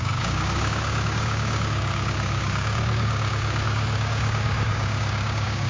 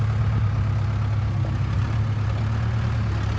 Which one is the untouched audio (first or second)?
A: second